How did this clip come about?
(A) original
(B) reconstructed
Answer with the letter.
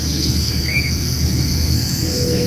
B